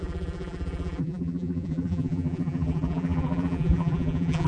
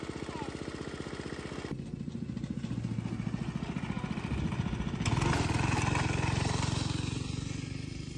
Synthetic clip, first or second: first